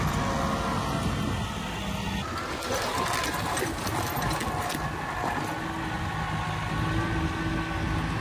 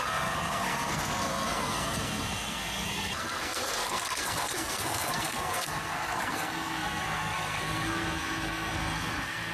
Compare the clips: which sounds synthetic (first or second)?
second